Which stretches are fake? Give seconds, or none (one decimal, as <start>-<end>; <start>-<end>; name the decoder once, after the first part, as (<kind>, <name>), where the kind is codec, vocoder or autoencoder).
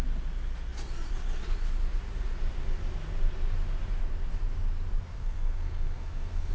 5.1-6.5 (codec, SNAC)